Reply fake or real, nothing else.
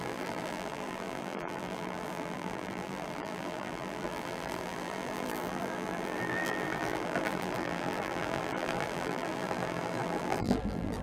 fake